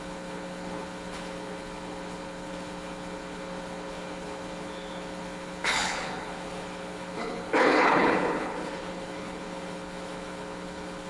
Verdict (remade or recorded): remade